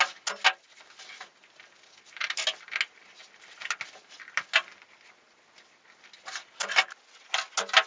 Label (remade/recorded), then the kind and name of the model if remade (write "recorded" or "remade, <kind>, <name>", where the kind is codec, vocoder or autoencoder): recorded